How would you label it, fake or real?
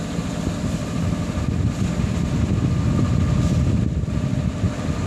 real